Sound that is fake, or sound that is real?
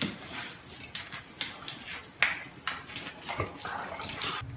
real